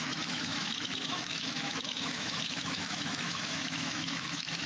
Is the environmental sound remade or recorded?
remade